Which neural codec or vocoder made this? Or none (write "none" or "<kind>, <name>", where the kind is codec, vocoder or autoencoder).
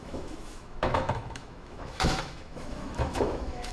autoencoder, DAC-VAE